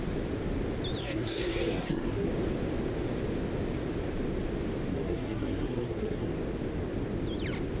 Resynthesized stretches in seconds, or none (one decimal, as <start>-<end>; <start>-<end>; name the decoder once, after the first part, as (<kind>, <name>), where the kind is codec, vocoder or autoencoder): 1.0-2.3 (codec, SNAC); 4.9-6.3